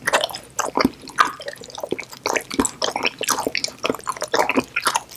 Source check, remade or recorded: recorded